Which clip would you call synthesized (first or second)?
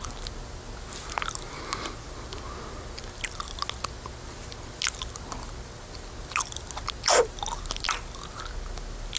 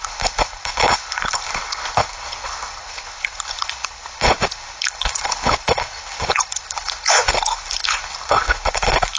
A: second